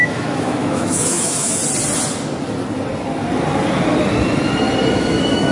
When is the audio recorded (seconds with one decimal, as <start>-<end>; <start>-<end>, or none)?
1.6-4.9